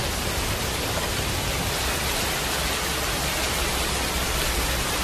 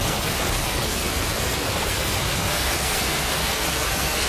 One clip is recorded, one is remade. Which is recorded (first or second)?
first